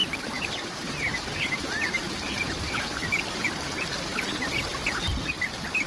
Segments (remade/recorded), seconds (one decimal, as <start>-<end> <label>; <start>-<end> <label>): 0.0-3.5 remade; 3.5-5.9 recorded